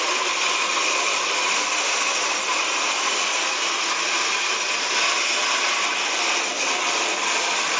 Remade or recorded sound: recorded